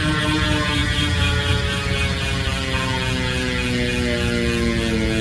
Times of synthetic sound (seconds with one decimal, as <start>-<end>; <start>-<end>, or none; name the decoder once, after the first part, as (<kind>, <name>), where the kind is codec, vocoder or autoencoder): 0.0-2.5 (vocoder, BigVGAN v2)